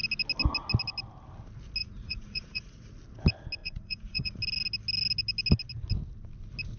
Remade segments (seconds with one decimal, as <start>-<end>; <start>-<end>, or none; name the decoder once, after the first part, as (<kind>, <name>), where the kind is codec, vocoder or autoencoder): 1.8-2.9 (vocoder, Vocos); 3.6-4.4